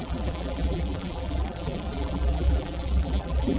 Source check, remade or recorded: remade